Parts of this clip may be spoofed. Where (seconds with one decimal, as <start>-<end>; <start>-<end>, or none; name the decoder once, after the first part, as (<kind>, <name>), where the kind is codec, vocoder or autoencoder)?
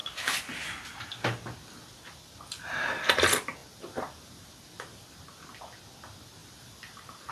3.6-5.1 (vocoder, BigVGAN v2); 6.4-7.3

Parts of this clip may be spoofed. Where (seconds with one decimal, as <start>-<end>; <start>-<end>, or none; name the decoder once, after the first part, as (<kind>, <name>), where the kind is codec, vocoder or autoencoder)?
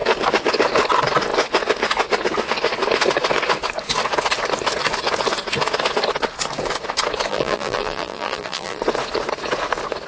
7.3-8.8 (vocoder, BigVGAN v2)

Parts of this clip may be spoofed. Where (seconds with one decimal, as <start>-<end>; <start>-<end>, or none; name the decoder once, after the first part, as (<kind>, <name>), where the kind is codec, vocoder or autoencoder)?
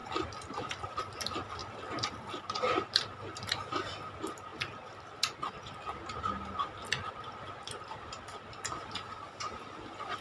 0.0-1.0 (vocoder, BigVGAN v2); 1.6-3.7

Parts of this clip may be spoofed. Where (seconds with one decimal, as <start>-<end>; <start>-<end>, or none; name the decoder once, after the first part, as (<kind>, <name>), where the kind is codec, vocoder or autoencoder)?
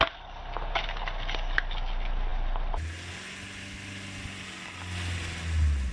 none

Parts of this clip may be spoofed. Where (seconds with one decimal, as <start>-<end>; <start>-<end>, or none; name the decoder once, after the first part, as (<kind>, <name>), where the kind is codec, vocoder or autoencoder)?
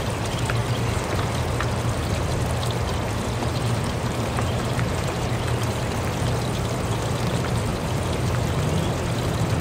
0.6-1.4 (vocoder, BigVGAN v2); 3.5-5.8; 7.7-8.5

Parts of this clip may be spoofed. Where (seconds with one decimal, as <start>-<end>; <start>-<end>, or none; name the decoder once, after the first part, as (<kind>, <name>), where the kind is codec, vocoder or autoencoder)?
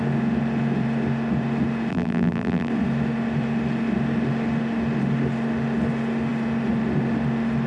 1.9-2.7 (vocoder, BigVGAN v2)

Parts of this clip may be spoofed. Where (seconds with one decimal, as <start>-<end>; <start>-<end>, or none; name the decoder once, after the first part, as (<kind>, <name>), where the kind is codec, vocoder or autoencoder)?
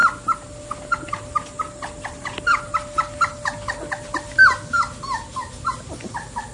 none